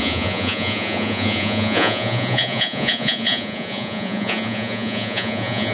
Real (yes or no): no